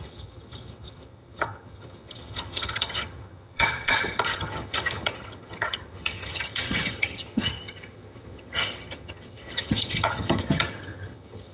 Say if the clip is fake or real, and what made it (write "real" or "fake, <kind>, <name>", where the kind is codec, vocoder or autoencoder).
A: fake, vocoder, HiFi-GAN